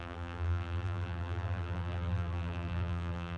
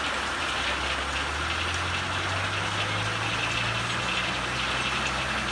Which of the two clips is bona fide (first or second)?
second